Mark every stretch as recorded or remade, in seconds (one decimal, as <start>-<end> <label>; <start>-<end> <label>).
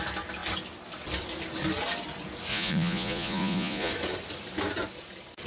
0.0-2.5 recorded; 2.5-3.9 remade; 3.9-5.5 recorded